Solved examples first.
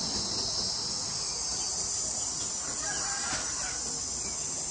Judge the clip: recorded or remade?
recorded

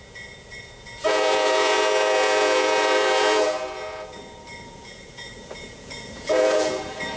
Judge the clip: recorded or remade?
remade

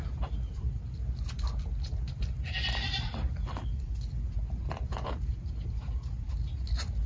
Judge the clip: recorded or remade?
recorded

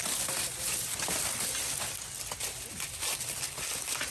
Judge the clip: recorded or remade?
recorded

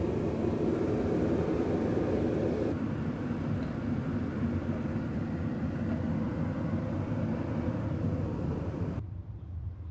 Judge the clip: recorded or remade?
recorded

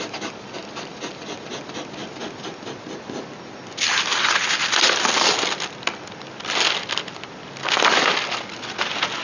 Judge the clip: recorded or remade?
recorded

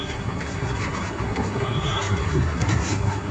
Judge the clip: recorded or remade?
remade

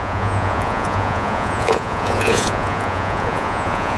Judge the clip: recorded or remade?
remade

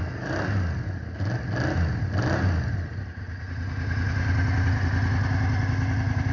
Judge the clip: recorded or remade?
recorded